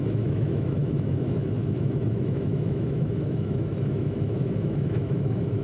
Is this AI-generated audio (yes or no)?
yes